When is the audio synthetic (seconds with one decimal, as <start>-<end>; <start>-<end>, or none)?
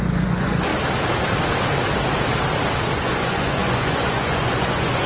0.0-0.7; 3.0-5.1